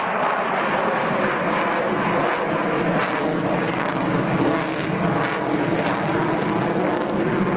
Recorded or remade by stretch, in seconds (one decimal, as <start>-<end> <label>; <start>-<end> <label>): 0.0-0.8 recorded; 0.8-1.3 remade; 1.3-3.3 recorded; 3.3-5.0 remade; 5.0-7.6 recorded